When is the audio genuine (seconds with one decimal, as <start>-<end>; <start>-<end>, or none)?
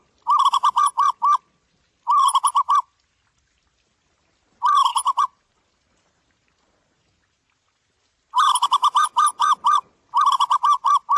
0.0-4.9; 8.0-11.2